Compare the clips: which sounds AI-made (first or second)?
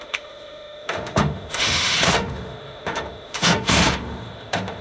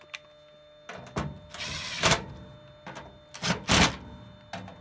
first